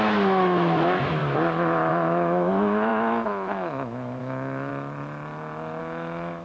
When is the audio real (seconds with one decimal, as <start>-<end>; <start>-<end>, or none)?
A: 1.2-1.9; 4.7-5.8